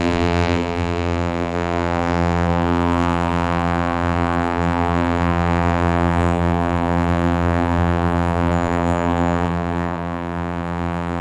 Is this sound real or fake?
fake